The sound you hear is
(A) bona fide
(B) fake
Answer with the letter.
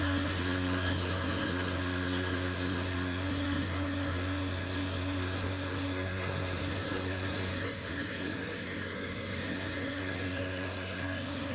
B